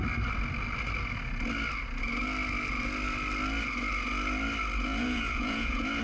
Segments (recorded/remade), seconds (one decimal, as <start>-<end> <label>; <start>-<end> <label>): 0.0-4.9 recorded; 4.9-6.0 remade